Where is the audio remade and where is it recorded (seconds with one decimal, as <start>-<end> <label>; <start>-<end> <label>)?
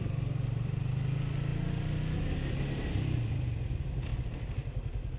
0.0-5.2 recorded